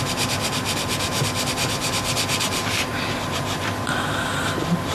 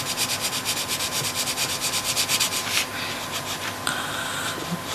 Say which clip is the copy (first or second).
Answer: first